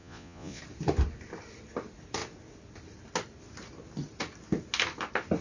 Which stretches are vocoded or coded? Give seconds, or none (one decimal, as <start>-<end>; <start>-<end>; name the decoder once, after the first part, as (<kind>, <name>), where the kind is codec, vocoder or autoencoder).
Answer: 0.0-0.6 (vocoder, Vocos)